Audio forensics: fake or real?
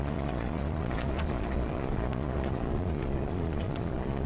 fake